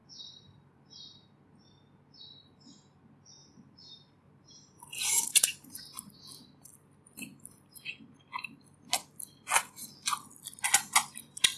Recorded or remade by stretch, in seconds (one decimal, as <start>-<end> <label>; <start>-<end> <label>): 0.0-0.8 remade; 0.8-3.4 recorded; 3.4-6.1 remade; 6.1-11.6 recorded